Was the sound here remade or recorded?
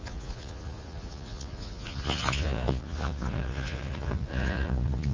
remade